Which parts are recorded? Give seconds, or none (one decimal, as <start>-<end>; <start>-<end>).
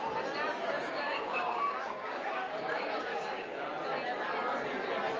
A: 0.0-0.5; 3.6-5.2